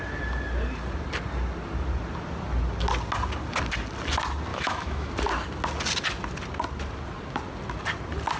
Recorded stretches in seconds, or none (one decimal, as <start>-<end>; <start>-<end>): 0.0-4.5; 5.1-8.4